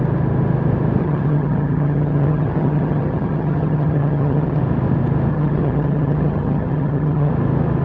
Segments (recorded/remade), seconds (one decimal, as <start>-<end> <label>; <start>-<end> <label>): 0.0-1.0 recorded; 1.0-4.6 remade; 4.6-5.3 recorded; 5.3-7.3 remade; 7.3-7.8 recorded